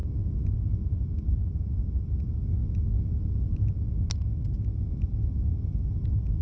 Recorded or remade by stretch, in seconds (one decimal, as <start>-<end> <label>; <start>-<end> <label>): 0.0-6.4 recorded